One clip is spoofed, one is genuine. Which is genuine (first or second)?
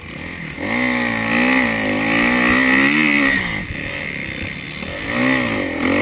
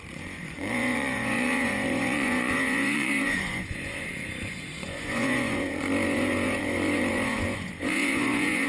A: first